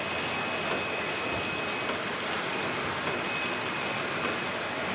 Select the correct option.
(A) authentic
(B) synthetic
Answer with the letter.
A